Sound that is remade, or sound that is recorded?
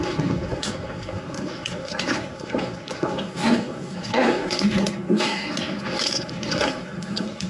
remade